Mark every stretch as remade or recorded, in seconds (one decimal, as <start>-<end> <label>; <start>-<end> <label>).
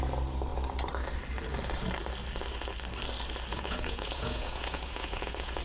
0.0-3.5 recorded; 3.5-5.6 remade